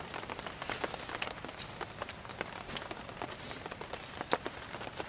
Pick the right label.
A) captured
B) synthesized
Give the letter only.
B